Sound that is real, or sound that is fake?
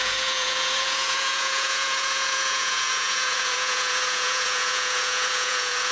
fake